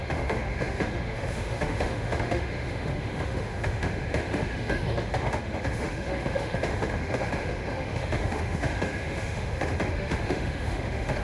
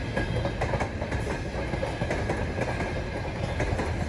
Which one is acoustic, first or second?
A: second